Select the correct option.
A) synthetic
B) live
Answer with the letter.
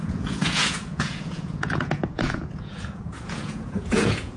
A